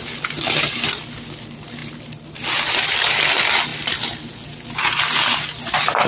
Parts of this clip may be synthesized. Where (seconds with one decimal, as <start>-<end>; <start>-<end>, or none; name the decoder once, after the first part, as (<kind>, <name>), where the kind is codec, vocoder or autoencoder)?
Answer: none